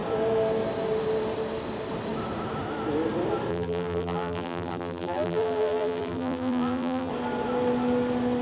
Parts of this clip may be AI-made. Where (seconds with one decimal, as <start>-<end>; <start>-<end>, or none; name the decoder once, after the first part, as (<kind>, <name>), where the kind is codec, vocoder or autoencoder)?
3.5-7.1 (vocoder, BigVGAN v2)